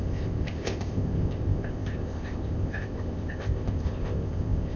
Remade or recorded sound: remade